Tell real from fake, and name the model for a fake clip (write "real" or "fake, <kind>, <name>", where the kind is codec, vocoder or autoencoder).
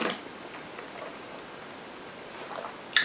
real